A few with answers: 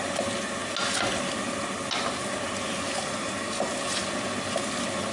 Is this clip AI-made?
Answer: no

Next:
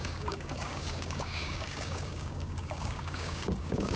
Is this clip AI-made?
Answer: yes